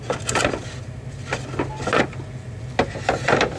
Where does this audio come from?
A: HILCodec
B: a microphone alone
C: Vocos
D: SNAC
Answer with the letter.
B